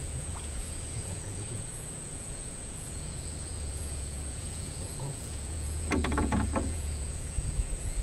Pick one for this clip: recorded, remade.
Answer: remade